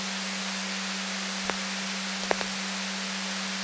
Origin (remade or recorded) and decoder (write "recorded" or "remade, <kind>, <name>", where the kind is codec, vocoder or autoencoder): recorded